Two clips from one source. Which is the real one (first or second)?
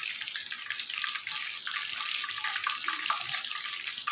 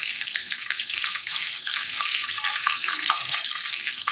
first